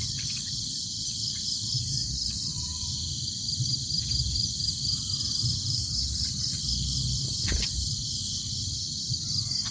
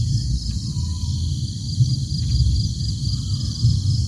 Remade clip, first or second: first